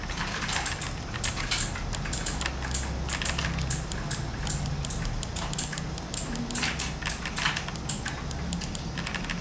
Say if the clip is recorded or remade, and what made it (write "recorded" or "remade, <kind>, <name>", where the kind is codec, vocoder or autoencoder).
recorded